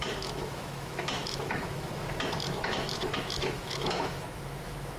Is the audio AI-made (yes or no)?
yes